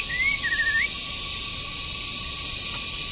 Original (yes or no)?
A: yes